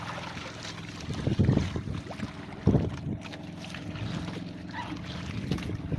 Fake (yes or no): no